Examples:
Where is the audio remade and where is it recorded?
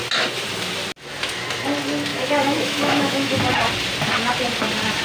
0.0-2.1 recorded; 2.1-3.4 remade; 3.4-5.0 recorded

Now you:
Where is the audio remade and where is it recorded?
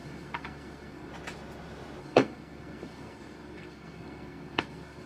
0.0-1.1 remade; 1.1-2.0 recorded; 2.0-5.1 remade